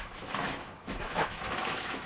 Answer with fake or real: fake